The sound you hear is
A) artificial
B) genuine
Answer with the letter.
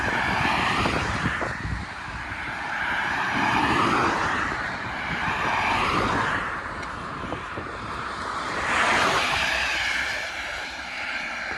A